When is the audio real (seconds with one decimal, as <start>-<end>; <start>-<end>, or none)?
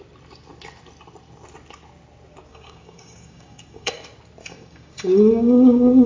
0.0-2.5; 3.9-4.4